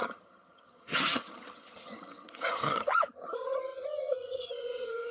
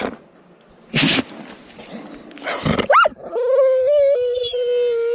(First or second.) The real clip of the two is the second